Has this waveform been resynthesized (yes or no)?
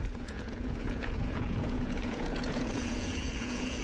yes